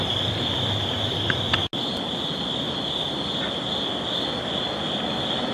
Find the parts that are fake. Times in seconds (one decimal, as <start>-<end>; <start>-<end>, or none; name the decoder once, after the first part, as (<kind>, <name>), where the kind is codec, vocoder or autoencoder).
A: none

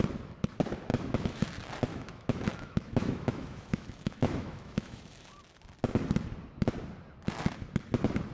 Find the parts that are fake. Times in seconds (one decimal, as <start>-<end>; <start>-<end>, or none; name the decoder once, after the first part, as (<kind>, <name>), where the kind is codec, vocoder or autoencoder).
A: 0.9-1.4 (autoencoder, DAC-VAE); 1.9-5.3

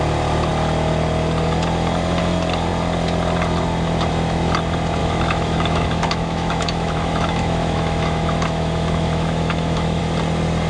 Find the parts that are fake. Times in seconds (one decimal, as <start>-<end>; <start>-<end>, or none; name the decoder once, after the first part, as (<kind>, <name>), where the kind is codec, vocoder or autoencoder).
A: 5.0-10.0 (autoencoder, DAC-VAE)

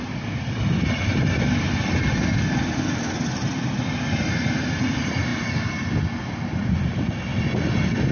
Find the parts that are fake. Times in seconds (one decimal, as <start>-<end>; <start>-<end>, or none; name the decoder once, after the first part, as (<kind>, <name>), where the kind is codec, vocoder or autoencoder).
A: none